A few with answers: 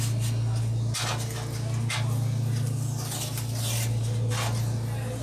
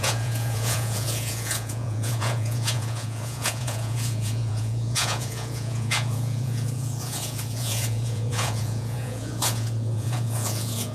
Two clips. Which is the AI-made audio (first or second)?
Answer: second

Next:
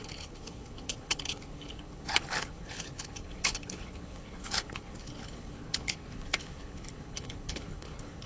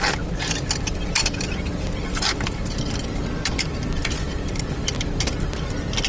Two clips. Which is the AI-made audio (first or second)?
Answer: first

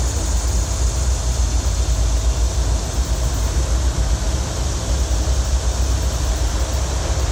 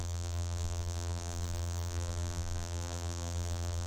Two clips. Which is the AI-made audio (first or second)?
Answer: second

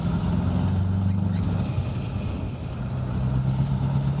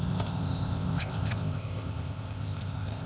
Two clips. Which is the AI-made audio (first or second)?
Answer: second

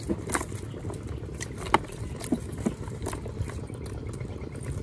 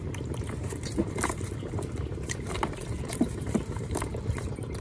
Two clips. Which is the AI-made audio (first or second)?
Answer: second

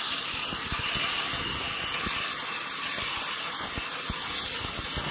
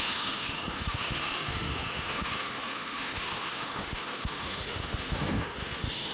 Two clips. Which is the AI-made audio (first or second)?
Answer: second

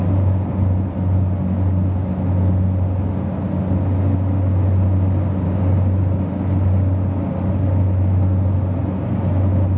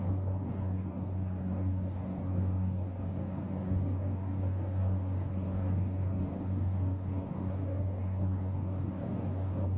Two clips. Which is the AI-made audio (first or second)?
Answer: second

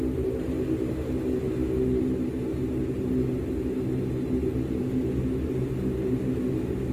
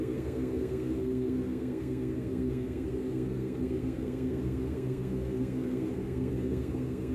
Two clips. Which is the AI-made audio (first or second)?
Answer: second